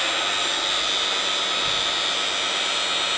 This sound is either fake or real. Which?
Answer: real